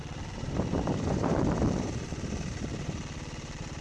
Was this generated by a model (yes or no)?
yes